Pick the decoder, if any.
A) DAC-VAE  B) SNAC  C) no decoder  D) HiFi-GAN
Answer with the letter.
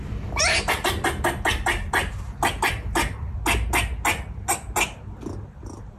C